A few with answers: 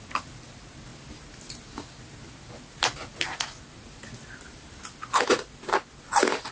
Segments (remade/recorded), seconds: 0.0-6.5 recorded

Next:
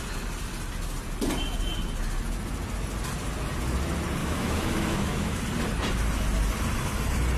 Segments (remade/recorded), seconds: 0.0-4.2 recorded; 4.2-5.4 remade; 5.4-7.4 recorded

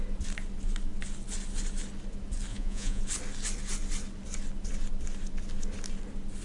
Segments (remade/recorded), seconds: 0.0-2.5 recorded; 2.5-3.0 remade; 3.0-6.4 recorded

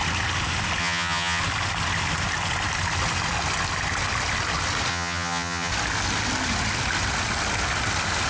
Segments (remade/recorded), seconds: 0.0-0.8 recorded; 0.8-1.4 remade; 1.4-4.9 recorded; 4.9-5.7 remade; 5.7-8.3 recorded

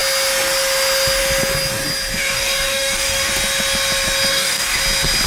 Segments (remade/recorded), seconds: 0.0-2.1 recorded; 2.1-3.3 remade; 3.3-4.3 recorded; 4.3-4.8 remade; 4.8-5.3 recorded

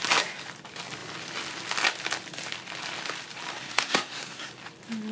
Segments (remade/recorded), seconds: 0.0-3.5 recorded; 3.5-4.5 remade; 4.5-5.1 recorded

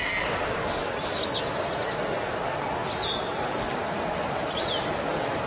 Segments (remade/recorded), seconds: 0.0-5.5 recorded